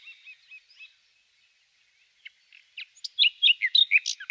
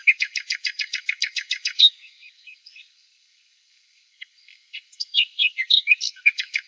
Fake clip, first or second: second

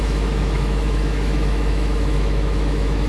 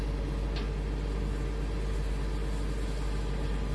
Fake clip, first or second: first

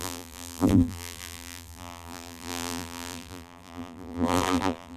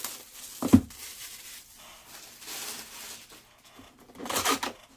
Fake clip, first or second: first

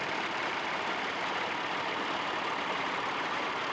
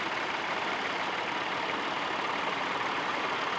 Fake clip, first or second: first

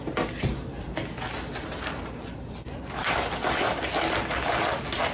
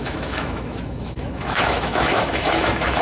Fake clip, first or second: second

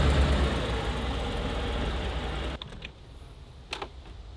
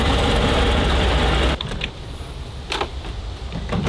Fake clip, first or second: second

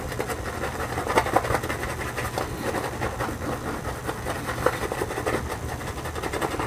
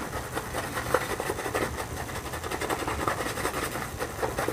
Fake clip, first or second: second